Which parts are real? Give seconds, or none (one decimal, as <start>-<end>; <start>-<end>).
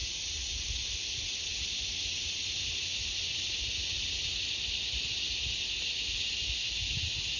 0.0-7.4